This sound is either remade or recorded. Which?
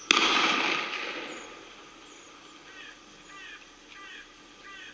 recorded